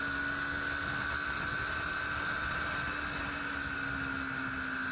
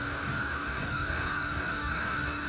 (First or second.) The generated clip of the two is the second